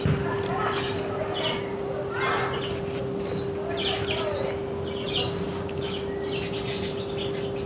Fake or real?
real